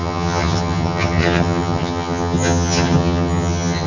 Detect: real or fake fake